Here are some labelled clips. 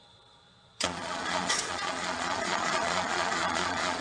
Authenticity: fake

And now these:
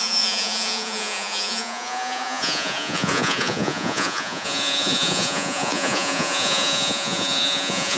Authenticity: fake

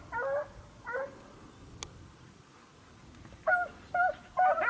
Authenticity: real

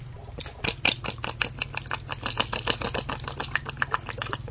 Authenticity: real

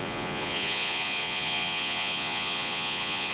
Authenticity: fake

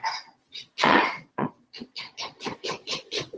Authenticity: fake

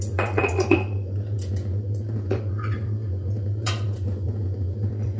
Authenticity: fake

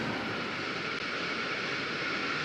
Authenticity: real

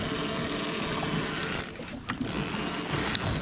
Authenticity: real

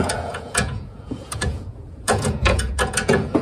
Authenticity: fake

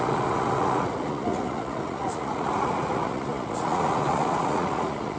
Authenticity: fake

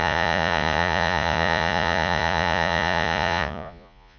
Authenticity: fake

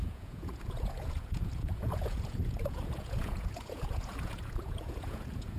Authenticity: fake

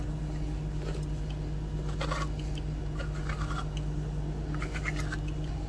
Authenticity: real